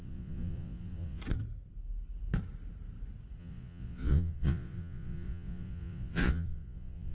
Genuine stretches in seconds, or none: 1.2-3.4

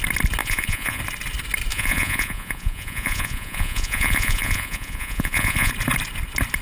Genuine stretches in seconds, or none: 0.0-0.4; 1.0-1.7; 5.7-6.6

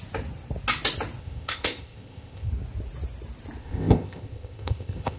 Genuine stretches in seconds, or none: 0.0-1.2; 2.5-3.6

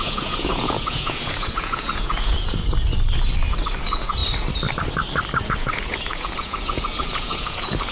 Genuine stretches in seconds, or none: 2.6-3.8; 4.2-5.4

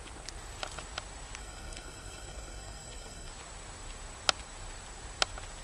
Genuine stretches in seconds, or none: 0.0-1.4; 3.3-5.6